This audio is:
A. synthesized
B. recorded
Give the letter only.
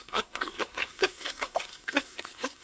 A